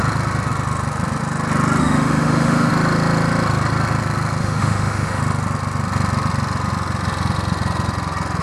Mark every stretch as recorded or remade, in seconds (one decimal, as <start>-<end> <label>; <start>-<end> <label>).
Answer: 0.0-1.8 recorded; 1.8-2.7 remade; 2.7-4.4 recorded; 4.4-5.2 remade; 5.2-8.4 recorded